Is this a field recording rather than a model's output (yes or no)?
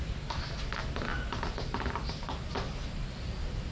yes